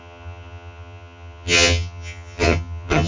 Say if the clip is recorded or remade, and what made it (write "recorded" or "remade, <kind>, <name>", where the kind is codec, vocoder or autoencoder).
remade, vocoder, HiFi-GAN